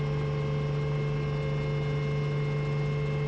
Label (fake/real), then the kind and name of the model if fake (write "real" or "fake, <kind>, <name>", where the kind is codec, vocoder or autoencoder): real